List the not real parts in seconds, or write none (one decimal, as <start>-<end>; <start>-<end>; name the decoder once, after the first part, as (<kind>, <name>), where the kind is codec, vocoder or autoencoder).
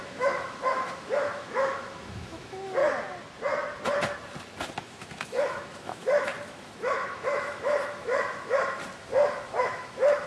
0.0-2.8 (autoencoder, DAC-VAE); 4.8-8.8; 9.6-10.3